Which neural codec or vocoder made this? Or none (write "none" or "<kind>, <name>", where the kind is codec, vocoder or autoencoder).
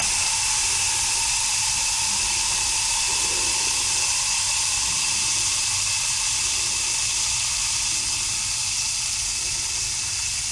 none